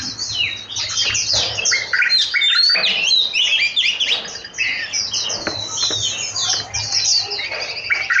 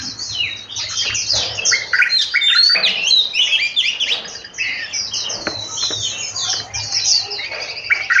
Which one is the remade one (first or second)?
second